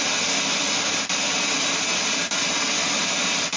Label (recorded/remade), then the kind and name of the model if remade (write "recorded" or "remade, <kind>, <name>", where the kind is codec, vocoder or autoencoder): recorded